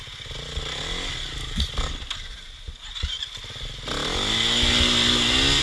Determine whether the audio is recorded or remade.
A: recorded